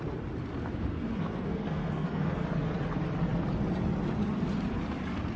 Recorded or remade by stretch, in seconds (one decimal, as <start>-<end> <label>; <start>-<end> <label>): 0.0-0.9 recorded; 0.9-2.4 remade; 2.4-5.4 recorded